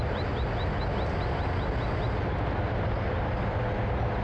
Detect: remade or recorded recorded